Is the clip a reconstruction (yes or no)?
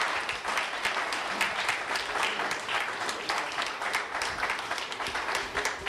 no